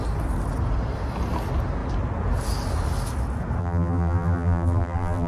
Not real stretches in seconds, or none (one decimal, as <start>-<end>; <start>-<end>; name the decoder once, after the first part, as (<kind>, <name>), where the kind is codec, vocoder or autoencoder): 3.6-5.3 (vocoder, BigVGAN v2)